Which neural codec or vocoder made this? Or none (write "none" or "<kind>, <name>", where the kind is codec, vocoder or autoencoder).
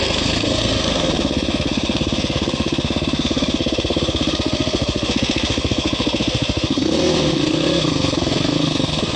codec, SNAC